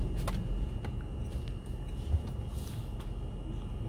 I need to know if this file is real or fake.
real